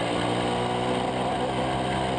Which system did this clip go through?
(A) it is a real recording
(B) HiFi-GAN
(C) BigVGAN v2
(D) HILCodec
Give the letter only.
A